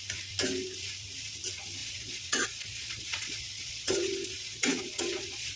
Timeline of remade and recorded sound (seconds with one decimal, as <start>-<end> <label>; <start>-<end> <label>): 0.0-1.8 recorded; 1.8-5.6 remade